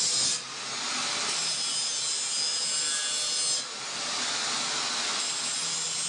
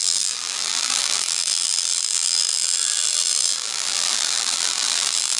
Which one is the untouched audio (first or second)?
first